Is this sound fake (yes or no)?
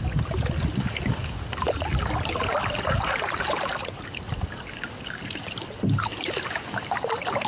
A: no